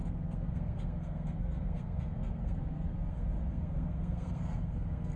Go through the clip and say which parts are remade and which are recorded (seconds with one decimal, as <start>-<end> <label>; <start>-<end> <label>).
0.0-5.2 remade